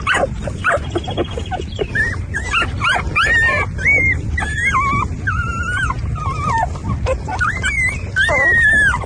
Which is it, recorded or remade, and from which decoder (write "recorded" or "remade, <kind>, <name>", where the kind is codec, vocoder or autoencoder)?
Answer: recorded